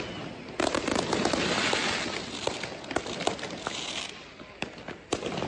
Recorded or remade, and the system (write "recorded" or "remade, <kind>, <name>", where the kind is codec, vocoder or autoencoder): recorded